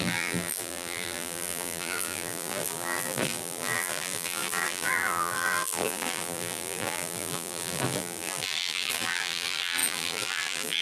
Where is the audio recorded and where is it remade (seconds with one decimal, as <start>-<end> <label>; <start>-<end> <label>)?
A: 0.0-10.8 remade